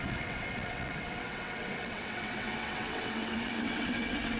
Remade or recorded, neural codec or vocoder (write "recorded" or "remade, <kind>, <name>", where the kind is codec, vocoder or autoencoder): remade, vocoder, WaveNeXt